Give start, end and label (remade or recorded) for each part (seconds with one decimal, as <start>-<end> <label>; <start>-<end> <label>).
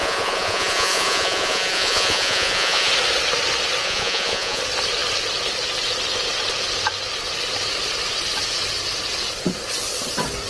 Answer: 0.0-2.9 remade; 2.9-3.8 recorded; 3.8-4.6 remade; 4.6-10.5 recorded